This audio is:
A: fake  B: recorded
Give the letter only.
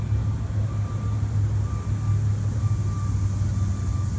B